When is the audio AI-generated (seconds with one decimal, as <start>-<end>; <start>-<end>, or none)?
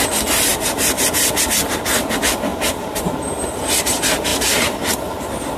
0.5-1.3; 2.5-3.0; 4.3-4.8